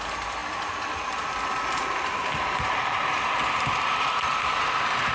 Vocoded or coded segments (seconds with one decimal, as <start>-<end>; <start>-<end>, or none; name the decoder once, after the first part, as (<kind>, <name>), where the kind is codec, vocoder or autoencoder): none